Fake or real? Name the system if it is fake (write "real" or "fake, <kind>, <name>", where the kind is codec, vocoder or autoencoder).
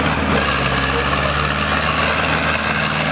real